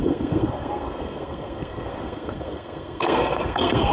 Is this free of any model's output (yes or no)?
no